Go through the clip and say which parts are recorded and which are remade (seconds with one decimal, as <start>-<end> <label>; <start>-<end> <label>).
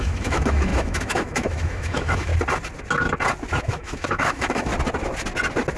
0.0-2.3 remade; 2.3-3.6 recorded; 3.6-4.7 remade; 4.7-5.8 recorded